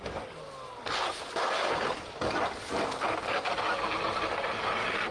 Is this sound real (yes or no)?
yes